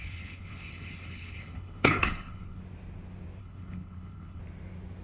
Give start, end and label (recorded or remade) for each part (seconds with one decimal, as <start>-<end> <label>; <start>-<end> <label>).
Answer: 0.0-2.6 remade; 2.6-3.4 recorded; 3.4-4.4 remade; 4.4-5.0 recorded